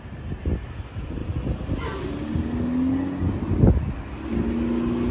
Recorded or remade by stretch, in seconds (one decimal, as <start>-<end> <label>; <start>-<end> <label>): 0.0-5.1 recorded